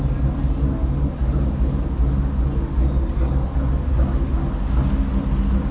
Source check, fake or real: real